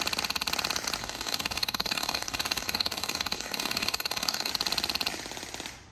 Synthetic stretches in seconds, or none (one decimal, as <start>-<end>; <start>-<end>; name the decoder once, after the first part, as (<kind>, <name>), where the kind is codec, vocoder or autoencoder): 1.0-4.5 (codec, DAC)